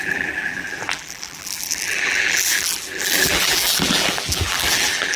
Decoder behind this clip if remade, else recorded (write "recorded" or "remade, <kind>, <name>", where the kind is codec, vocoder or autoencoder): remade, vocoder, BigVGAN v2